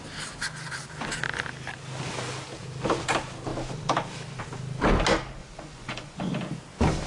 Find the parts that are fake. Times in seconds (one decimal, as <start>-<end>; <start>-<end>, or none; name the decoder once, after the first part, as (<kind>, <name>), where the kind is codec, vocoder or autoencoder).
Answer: 5.4-6.3 (vocoder, Vocos)